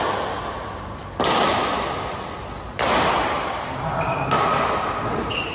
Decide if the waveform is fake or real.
real